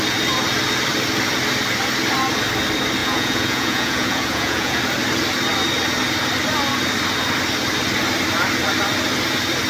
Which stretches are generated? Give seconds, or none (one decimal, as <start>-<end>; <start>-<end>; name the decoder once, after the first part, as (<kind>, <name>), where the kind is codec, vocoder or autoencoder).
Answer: 3.0-4.8 (vocoder, Vocos)